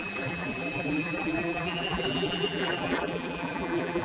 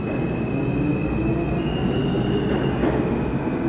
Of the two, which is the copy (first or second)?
first